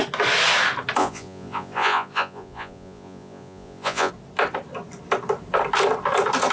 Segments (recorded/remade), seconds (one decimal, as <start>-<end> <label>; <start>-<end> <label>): 0.0-1.0 recorded; 1.0-4.1 remade; 4.1-6.5 recorded